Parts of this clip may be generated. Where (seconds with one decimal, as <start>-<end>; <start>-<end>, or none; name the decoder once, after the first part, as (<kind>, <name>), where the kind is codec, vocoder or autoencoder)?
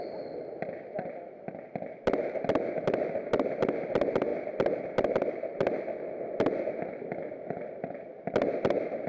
none